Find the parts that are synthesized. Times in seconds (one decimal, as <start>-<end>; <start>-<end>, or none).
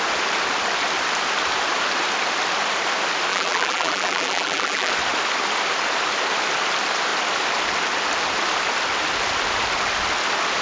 3.3-4.9